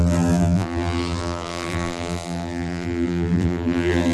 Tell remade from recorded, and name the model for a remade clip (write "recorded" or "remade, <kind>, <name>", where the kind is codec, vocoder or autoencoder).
remade, vocoder, BigVGAN v2